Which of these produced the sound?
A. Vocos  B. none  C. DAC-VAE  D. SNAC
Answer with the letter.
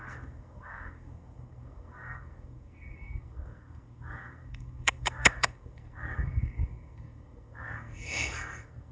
D